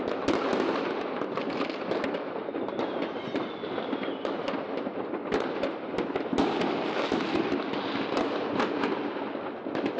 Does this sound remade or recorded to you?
recorded